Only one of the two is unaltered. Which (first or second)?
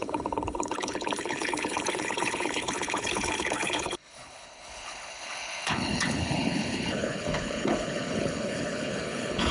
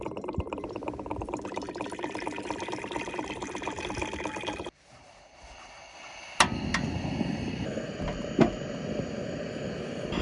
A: second